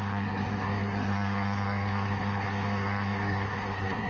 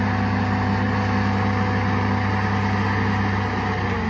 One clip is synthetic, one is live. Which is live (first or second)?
second